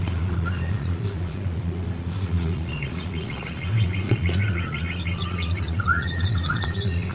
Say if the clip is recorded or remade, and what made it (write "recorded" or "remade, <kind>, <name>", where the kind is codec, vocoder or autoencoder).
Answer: remade, vocoder, Vocos